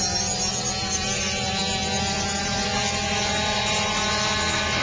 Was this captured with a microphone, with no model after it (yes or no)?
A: yes